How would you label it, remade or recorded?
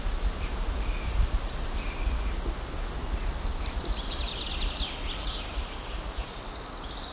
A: recorded